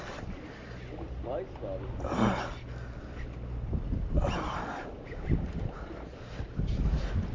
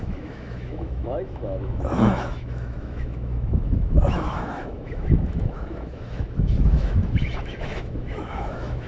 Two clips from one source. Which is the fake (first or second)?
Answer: second